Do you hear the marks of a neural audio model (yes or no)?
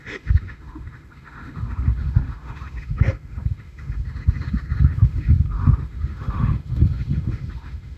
yes